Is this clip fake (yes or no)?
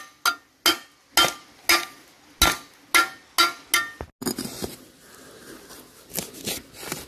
no